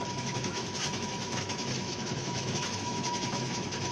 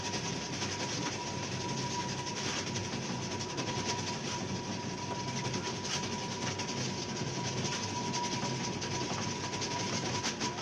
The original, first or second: second